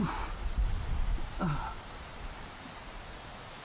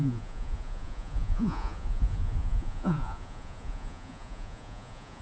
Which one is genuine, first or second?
first